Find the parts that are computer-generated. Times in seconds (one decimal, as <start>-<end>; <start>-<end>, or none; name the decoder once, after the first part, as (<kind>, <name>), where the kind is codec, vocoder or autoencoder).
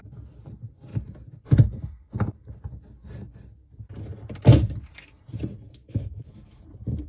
5.8-6.6 (autoencoder, DAC-VAE)